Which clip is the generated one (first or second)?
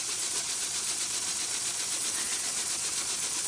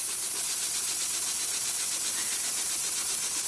first